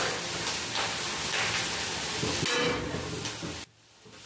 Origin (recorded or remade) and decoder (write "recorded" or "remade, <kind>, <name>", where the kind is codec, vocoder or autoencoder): recorded